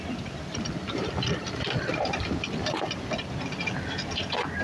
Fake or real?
real